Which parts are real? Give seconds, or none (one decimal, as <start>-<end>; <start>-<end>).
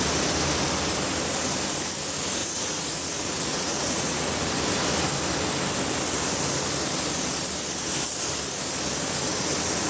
0.0-2.4; 4.5-9.9